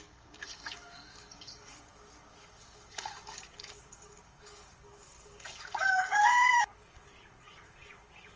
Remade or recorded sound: remade